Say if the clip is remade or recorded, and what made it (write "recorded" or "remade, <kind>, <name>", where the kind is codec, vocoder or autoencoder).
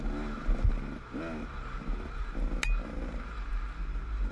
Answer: recorded